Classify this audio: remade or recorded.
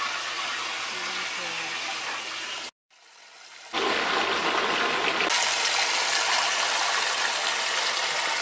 recorded